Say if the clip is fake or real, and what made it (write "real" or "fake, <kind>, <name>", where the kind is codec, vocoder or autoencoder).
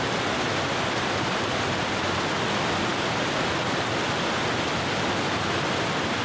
real